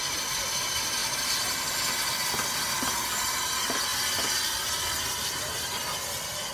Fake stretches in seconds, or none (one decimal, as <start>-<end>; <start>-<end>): none